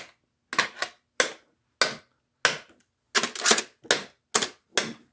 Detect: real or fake real